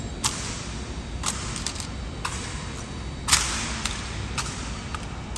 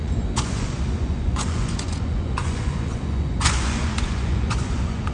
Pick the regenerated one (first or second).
second